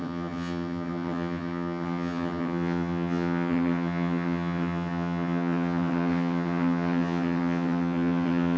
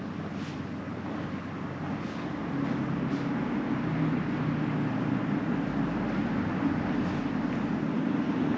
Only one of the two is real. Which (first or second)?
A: second